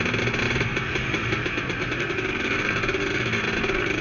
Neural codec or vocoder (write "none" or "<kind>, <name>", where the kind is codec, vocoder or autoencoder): none